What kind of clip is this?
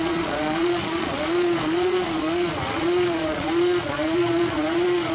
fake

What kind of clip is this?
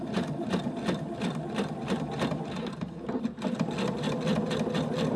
real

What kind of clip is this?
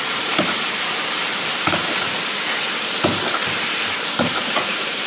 fake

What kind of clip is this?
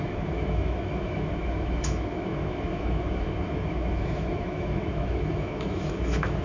fake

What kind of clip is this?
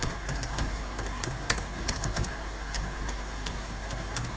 fake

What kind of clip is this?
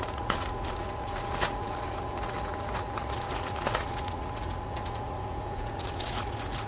fake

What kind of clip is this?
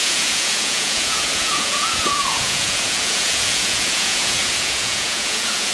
fake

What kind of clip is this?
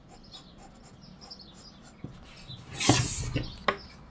real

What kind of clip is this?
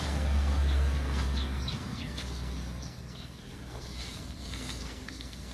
fake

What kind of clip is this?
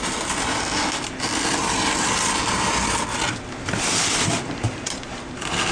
real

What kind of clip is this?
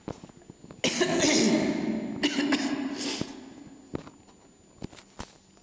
real